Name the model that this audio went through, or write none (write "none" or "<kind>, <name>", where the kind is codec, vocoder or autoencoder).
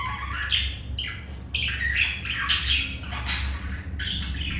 none